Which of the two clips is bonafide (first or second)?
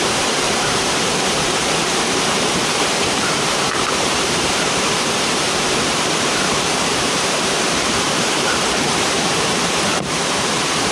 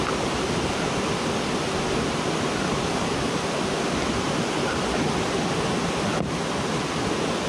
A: second